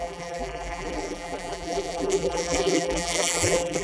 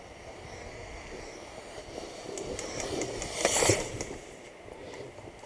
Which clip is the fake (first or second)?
first